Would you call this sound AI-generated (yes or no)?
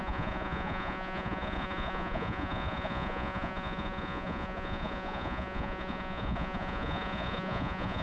yes